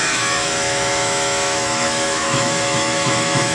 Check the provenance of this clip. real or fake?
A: fake